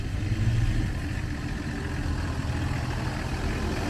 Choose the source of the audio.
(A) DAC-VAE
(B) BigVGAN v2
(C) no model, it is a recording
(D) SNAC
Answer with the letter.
C